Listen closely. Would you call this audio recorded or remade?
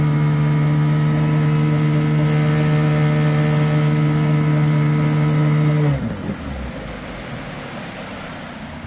recorded